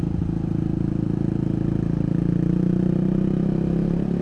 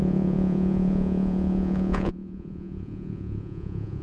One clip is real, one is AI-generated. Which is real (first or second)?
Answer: first